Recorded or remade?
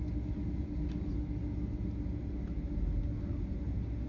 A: recorded